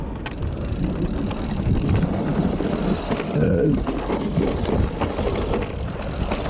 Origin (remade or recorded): recorded